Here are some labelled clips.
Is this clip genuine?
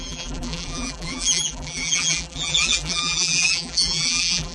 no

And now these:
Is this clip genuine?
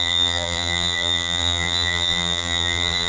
no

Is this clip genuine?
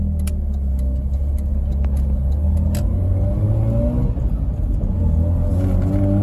yes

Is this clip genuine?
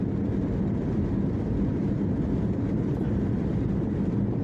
yes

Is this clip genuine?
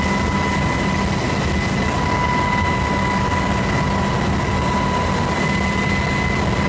yes